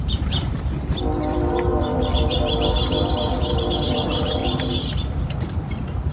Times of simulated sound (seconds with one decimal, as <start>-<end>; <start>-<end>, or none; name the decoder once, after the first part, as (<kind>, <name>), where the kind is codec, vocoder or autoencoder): 0.0-6.1 (vocoder, BigVGAN v2)

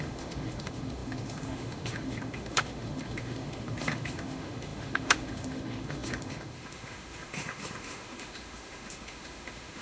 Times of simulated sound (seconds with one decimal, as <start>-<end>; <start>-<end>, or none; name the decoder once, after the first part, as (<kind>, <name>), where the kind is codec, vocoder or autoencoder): 0.0-9.8 (autoencoder, DAC-VAE)

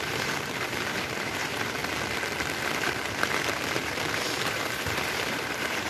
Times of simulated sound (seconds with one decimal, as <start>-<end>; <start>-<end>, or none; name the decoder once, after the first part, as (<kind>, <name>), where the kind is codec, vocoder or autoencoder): 0.0-1.8 (vocoder, BigVGAN v2); 2.6-5.9

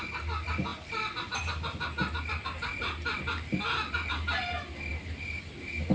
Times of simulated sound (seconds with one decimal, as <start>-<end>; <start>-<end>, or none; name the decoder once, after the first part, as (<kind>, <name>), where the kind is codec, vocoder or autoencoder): none

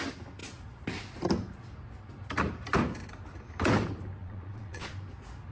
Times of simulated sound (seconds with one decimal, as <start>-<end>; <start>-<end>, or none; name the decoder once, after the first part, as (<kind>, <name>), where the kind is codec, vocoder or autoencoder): 4.2-4.9 (vocoder, Vocos)

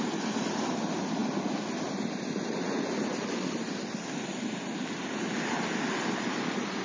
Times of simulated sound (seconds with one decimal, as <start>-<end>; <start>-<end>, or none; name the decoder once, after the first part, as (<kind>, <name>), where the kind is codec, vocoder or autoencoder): none

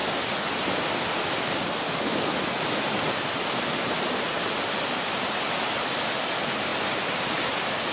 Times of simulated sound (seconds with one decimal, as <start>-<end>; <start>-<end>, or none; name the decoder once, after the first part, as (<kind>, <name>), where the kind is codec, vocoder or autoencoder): none